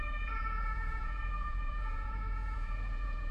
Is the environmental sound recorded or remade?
remade